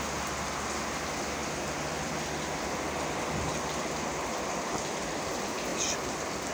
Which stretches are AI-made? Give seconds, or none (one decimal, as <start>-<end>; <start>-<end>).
none